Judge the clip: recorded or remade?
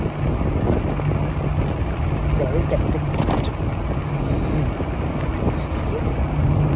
recorded